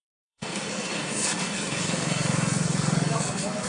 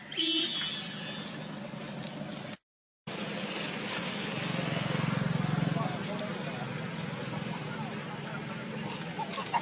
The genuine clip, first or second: second